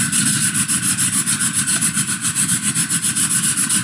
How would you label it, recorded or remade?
recorded